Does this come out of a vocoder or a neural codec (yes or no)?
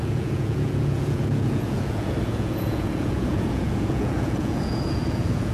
yes